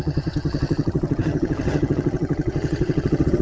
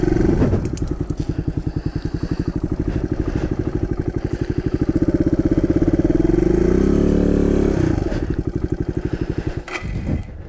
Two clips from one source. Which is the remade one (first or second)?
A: first